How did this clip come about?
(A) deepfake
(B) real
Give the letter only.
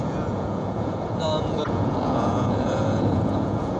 A